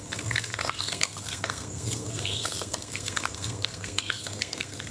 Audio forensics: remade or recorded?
remade